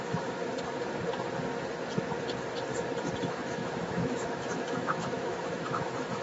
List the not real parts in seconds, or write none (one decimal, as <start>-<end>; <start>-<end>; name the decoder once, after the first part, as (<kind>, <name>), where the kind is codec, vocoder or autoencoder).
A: 0.0-0.5 (autoencoder, DAC-VAE); 3.2-6.2